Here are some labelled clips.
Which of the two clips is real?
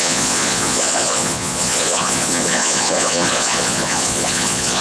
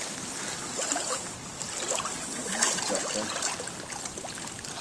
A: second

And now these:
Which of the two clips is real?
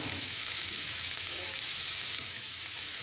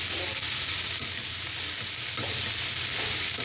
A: second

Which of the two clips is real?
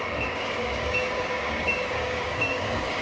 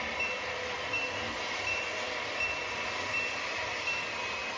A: second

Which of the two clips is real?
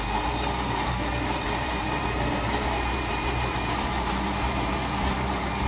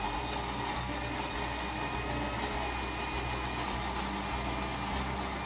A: second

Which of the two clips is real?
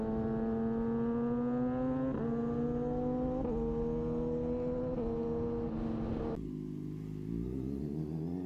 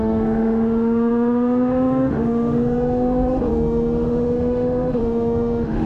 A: first